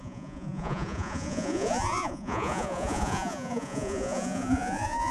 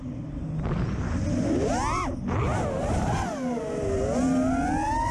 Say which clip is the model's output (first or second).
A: first